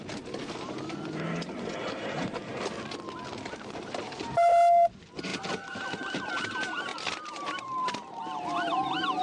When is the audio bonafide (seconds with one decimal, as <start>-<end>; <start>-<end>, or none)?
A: 2.5-3.5